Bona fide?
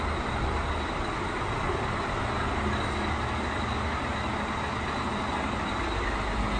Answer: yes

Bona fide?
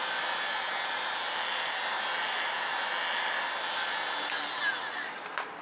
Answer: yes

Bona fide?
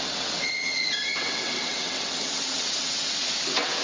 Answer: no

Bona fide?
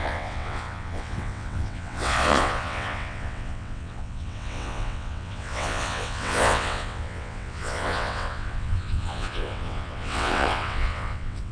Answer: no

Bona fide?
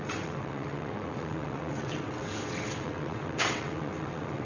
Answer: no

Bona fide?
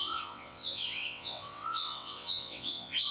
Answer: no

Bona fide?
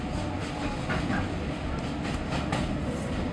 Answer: yes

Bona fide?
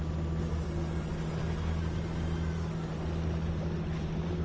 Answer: yes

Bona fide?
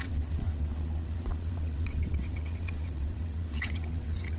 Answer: no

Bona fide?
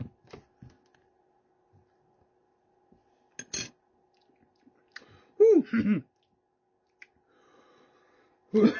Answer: yes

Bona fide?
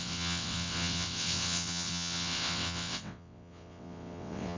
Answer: no